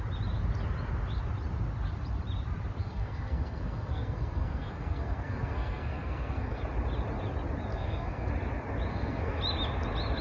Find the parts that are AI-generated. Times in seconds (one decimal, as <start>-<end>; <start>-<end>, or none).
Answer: 2.8-6.6; 7.7-8.3; 8.9-9.4